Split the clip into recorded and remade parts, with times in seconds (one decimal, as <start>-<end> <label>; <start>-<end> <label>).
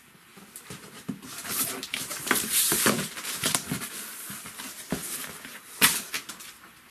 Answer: 0.0-1.8 recorded; 1.8-3.5 remade; 3.5-6.9 recorded